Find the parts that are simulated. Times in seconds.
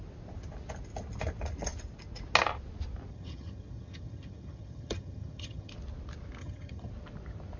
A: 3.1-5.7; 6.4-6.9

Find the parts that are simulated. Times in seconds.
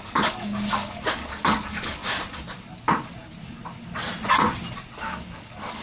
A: 0.0-2.0; 5.0-5.8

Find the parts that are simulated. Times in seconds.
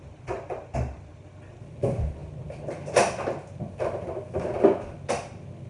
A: none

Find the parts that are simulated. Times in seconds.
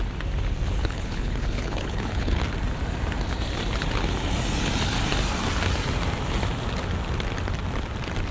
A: 0.8-2.4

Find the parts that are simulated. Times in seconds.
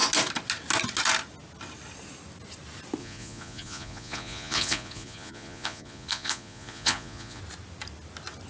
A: 3.0-7.4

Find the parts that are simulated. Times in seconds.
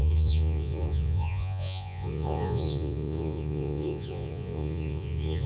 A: 0.0-5.5